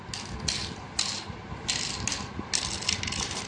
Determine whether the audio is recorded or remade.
recorded